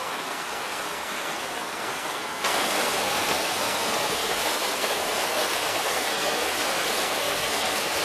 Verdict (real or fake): fake